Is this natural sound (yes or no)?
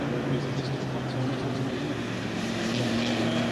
yes